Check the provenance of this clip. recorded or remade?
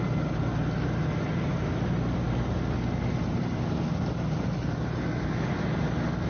recorded